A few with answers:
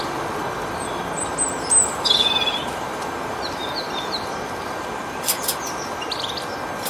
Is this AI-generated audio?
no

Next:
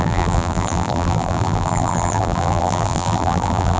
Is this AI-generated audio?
yes